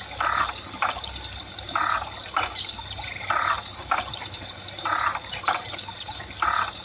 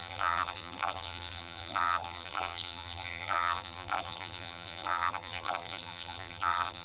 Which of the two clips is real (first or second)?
first